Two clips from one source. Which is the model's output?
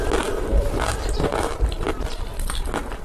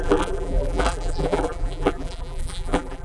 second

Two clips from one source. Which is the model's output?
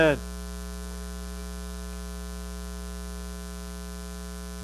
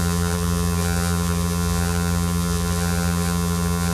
second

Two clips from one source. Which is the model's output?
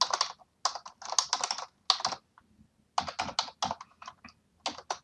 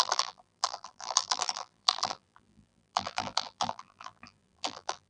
second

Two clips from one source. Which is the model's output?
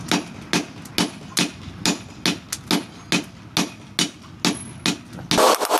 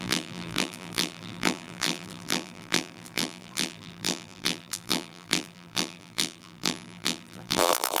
second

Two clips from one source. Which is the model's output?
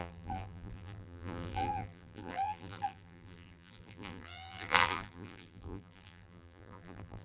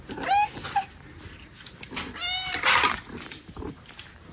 first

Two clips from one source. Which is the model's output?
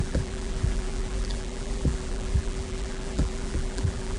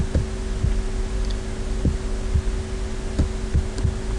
first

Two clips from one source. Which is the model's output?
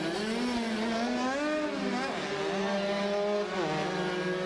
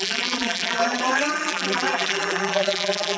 second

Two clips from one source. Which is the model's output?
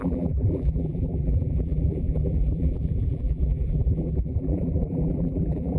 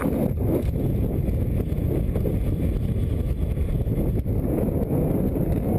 first